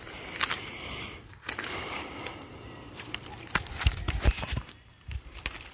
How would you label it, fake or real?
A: fake